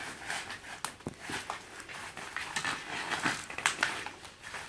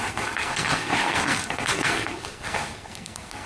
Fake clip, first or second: second